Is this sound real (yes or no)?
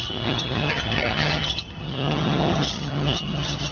no